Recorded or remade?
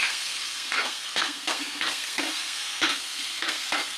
remade